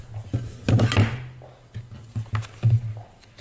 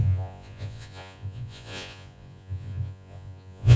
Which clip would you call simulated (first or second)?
second